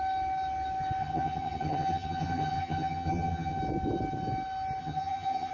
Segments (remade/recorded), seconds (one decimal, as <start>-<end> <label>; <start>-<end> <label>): 0.0-1.0 recorded; 1.0-3.6 remade; 3.6-4.8 recorded; 4.8-5.5 remade